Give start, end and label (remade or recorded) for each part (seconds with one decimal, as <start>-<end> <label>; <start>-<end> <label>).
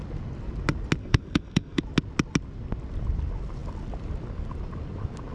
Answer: 0.0-1.0 recorded; 1.0-1.8 remade; 1.8-5.3 recorded